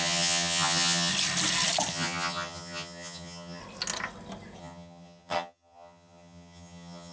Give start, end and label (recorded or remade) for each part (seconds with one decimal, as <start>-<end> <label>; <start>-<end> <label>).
0.0-1.1 remade; 1.1-1.9 recorded; 1.9-3.6 remade; 3.6-4.6 recorded; 4.6-7.1 remade